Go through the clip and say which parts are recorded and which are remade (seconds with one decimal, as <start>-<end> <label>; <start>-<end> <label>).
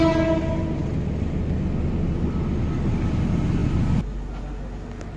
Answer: 0.0-5.2 recorded